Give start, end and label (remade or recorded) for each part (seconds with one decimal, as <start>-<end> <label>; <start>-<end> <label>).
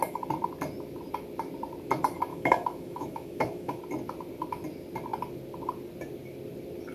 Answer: 0.0-2.3 recorded; 2.3-3.8 remade; 3.8-6.9 recorded